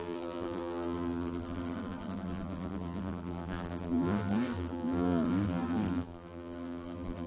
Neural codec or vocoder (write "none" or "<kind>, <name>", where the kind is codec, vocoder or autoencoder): vocoder, BigVGAN v2